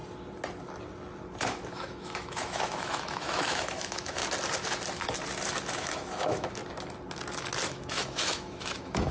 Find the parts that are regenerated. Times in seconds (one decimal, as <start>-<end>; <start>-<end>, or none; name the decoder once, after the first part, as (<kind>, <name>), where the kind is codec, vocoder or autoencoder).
1.7-4.2 (autoencoder, DAC-VAE); 5.7-6.6; 7.7-9.1